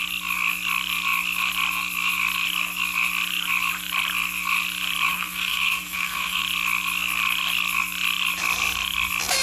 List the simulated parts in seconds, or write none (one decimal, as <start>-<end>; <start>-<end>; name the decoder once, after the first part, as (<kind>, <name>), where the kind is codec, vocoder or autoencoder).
5.1-6.4 (codec, SNAC)